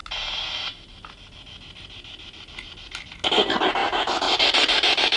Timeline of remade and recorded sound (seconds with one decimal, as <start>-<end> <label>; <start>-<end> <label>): 0.0-3.8 recorded; 3.8-5.2 remade